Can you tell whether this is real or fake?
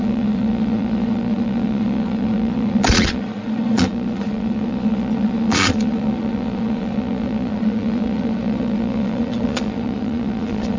fake